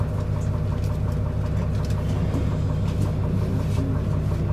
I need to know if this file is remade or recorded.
recorded